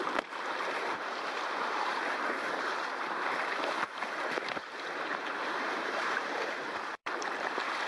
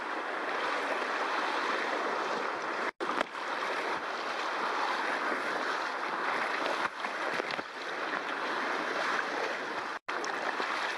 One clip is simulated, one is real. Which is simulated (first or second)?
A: first